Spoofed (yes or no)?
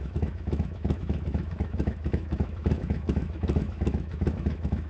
yes